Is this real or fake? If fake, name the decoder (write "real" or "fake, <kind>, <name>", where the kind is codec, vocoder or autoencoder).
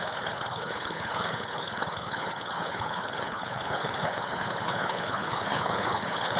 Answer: fake, codec, HILCodec